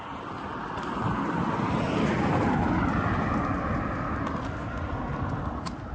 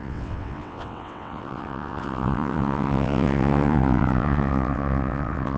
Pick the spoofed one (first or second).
second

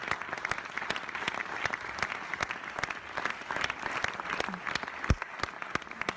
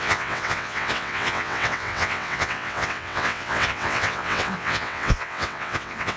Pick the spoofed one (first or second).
second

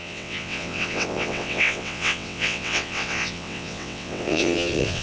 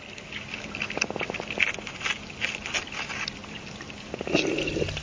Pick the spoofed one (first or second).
first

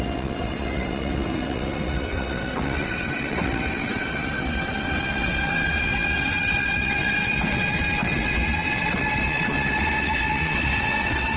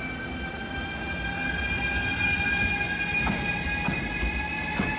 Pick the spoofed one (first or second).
first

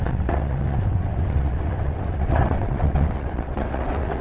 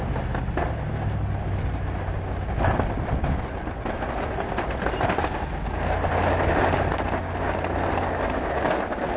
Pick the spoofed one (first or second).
first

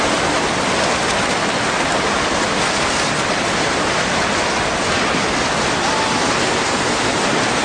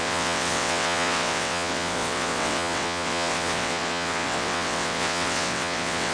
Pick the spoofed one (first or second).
second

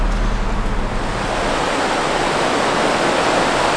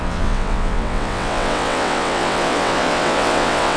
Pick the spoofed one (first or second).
second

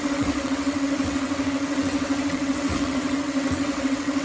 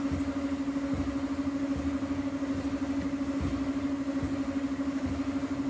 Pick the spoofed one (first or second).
first